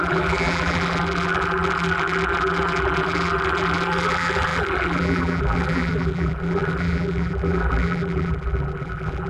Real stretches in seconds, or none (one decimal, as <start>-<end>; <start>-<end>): none